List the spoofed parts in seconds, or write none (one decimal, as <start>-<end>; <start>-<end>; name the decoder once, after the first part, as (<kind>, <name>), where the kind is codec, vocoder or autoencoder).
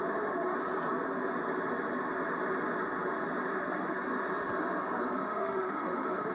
5.2-6.3 (autoencoder, DAC-VAE)